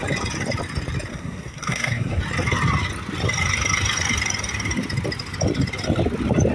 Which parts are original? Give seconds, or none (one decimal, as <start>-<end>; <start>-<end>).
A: 0.0-1.1; 2.2-6.5